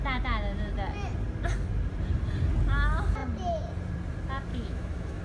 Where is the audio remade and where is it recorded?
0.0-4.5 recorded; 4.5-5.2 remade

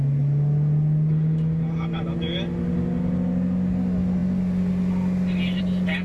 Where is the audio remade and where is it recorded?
0.0-6.0 recorded

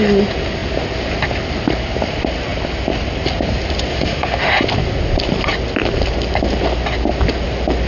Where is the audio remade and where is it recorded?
0.0-3.9 recorded; 3.9-4.5 remade; 4.5-7.9 recorded

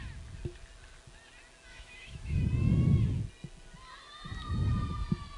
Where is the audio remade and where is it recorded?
0.0-1.7 recorded; 1.7-2.4 remade; 2.4-5.4 recorded

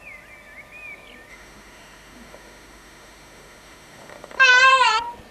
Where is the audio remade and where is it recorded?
0.0-1.3 recorded; 1.3-4.5 remade; 4.5-5.3 recorded

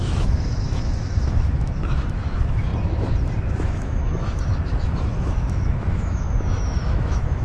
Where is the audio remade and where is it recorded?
0.0-2.7 remade; 2.7-3.4 recorded; 3.4-7.4 remade

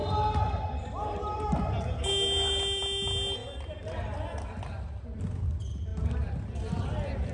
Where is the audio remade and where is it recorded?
0.0-7.3 recorded